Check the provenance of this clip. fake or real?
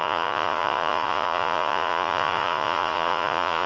fake